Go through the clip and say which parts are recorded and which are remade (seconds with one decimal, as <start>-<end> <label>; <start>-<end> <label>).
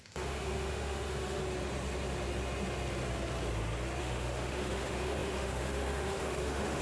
0.0-1.4 remade; 1.4-4.0 recorded; 4.0-6.8 remade